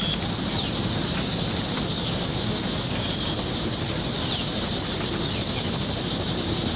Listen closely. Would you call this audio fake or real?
real